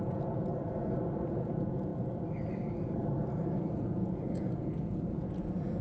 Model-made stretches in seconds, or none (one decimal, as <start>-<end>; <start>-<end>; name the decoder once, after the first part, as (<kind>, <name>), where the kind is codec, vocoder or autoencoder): 0.0-0.5 (vocoder, Vocos); 1.4-1.9; 3.7-5.8